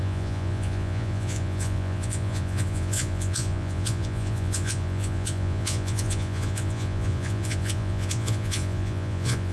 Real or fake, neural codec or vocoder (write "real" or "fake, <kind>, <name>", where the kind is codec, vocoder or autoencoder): fake, vocoder, Vocos